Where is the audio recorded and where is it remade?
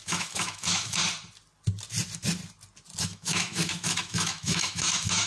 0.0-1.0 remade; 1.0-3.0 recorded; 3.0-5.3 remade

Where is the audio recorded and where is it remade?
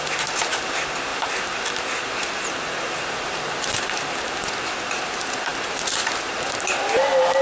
0.0-7.4 recorded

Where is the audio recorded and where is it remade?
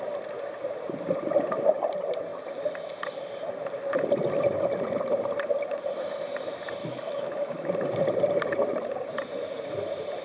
0.0-6.8 recorded; 6.8-7.7 remade; 7.7-10.2 recorded